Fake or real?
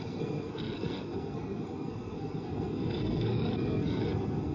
fake